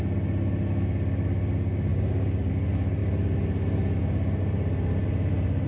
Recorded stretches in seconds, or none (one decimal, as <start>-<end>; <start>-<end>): 0.0-1.9; 2.5-5.7